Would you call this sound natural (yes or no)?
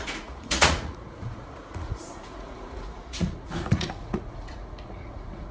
no